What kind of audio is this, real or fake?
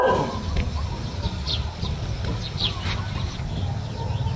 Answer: real